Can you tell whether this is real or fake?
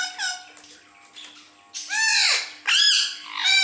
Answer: real